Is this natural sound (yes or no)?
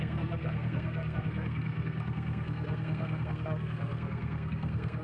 no